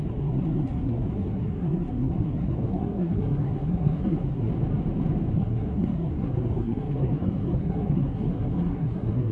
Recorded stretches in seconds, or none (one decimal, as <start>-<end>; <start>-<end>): 4.5-5.3